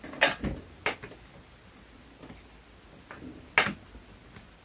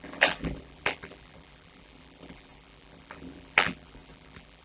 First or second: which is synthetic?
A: second